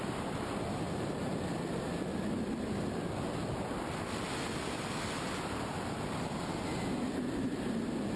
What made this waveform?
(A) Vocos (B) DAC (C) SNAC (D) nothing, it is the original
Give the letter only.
D